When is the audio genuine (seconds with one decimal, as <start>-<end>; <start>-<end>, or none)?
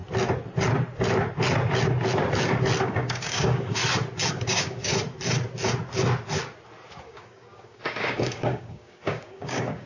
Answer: 0.0-2.8; 3.8-4.3; 4.9-7.0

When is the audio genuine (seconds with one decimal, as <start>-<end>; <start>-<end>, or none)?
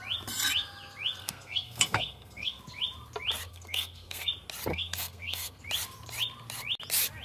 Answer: 0.0-1.2; 2.6-3.5; 4.3-4.7; 5.6-7.2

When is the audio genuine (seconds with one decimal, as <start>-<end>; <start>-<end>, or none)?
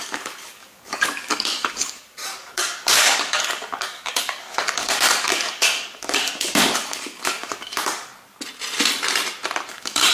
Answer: 8.1-9.7